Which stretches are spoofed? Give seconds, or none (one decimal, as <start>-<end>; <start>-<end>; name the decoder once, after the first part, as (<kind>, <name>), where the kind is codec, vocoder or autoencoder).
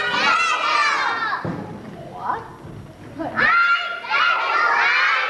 none